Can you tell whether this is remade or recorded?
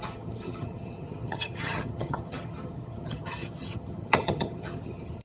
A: remade